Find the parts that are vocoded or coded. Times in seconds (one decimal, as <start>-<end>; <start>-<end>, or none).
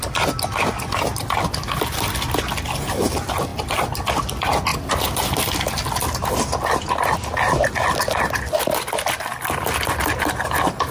3.5-4.1